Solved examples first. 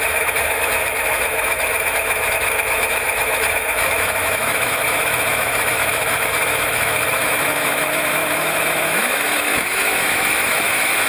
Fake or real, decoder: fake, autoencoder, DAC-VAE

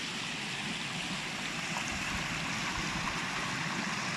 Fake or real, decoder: real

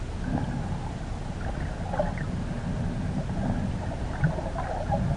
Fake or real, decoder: real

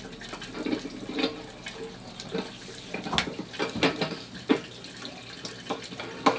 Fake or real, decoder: real